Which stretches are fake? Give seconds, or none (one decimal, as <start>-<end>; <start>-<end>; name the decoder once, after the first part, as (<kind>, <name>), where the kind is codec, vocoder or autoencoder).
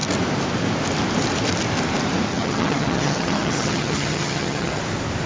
2.3-4.8 (vocoder, HiFi-GAN)